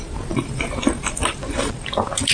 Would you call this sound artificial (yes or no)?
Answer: no